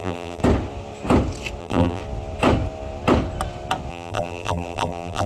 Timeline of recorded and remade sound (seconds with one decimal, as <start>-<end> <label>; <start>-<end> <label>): 0.0-0.4 remade; 0.4-1.6 recorded; 1.6-2.0 remade; 2.0-3.9 recorded; 3.9-5.3 remade